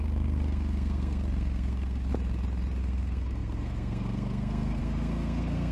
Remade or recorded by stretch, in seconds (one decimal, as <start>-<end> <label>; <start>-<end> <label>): 0.0-2.1 remade; 2.1-2.8 recorded; 2.8-5.7 remade